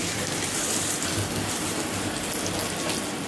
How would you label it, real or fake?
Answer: real